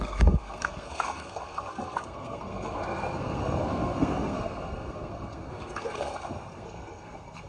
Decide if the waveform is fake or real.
fake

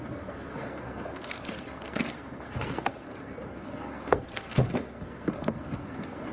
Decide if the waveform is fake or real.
fake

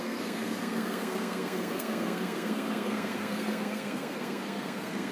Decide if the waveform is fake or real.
fake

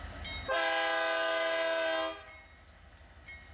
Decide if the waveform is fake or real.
real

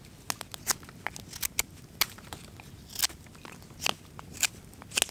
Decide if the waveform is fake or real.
real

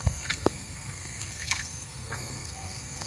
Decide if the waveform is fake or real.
fake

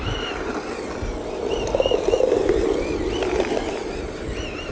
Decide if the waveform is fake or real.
real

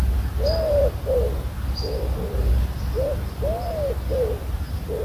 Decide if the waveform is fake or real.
real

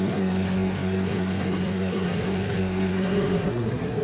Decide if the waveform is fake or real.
fake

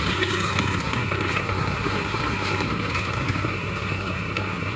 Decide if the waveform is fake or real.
fake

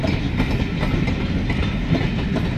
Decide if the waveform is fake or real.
real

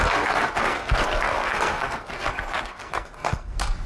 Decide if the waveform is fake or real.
fake